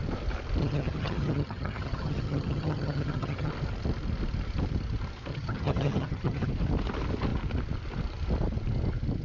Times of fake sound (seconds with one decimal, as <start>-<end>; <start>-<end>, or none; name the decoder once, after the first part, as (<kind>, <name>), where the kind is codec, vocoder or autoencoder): 0.6-3.5 (vocoder, HiFi-GAN); 5.3-6.5